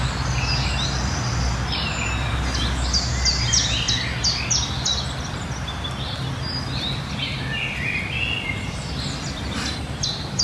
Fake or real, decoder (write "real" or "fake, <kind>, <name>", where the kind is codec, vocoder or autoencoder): real